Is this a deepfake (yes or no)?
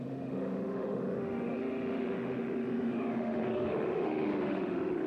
yes